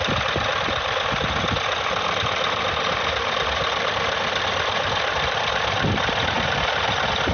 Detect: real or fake real